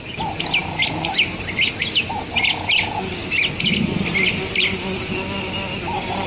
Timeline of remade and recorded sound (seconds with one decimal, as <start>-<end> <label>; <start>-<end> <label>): 0.0-6.3 recorded

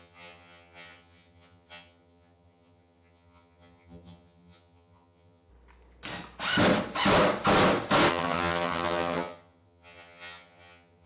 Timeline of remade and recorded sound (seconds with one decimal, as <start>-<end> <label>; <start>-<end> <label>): 0.0-5.5 remade; 5.5-8.1 recorded; 8.1-11.1 remade

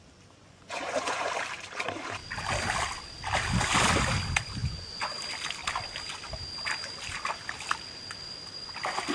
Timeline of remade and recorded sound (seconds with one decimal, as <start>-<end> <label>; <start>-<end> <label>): 0.0-0.4 recorded; 0.4-1.3 remade; 1.3-4.6 recorded; 4.6-5.1 remade; 5.1-9.1 recorded

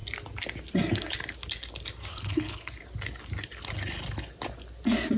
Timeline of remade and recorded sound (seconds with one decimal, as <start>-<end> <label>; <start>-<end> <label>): 0.0-2.1 recorded; 2.1-2.8 remade; 2.8-5.2 recorded

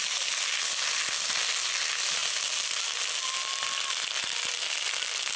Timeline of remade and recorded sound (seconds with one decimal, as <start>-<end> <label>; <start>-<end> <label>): 0.0-5.4 recorded